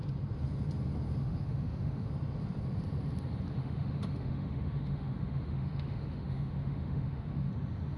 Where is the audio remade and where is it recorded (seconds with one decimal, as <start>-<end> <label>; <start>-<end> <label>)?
0.0-1.2 recorded; 1.2-2.1 remade; 2.1-3.6 recorded; 3.6-7.5 remade; 7.5-8.0 recorded